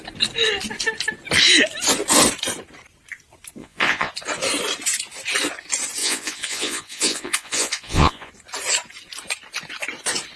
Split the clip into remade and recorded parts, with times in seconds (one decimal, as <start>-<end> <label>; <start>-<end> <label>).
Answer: 0.0-3.6 recorded; 3.6-4.1 remade; 4.1-6.0 recorded; 6.0-8.3 remade; 8.3-10.4 recorded